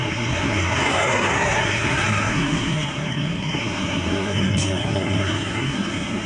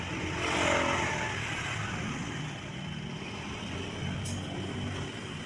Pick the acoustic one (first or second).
second